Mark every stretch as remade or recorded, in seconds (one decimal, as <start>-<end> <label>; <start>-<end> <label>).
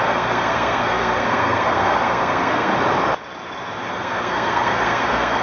0.0-2.7 remade; 2.7-3.9 recorded; 3.9-5.4 remade